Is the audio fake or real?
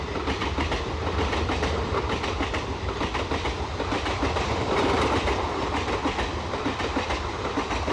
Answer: fake